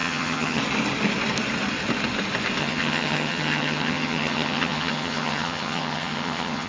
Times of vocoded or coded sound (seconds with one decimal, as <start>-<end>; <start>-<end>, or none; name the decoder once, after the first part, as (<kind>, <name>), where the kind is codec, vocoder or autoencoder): 0.0-0.6 (vocoder, HiFi-GAN); 2.6-6.7